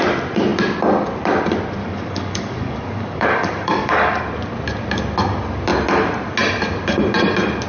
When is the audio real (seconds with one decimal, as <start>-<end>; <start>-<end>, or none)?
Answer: 0.0-1.8; 4.2-7.7